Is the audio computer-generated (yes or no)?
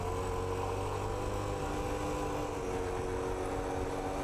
no